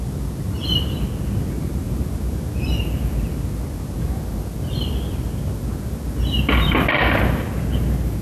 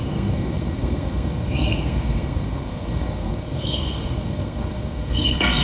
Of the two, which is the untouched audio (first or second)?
first